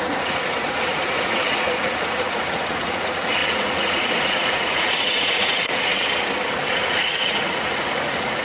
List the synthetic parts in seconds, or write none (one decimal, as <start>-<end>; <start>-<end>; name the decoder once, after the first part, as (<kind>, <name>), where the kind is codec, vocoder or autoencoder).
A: 0.0-5.9 (vocoder, Vocos); 6.7-8.4